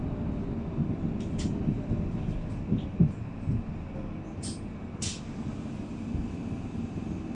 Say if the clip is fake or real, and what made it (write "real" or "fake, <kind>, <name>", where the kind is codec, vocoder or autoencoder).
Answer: real